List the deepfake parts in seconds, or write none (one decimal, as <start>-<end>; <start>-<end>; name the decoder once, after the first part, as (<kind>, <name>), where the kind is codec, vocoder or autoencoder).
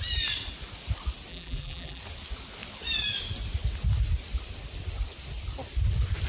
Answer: 1.3-2.0 (vocoder, BigVGAN v2)